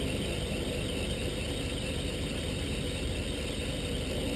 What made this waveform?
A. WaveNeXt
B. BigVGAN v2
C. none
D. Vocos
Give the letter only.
C